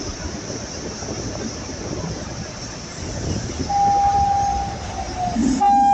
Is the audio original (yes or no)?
yes